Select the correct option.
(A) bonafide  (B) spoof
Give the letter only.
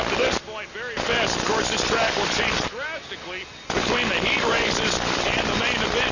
A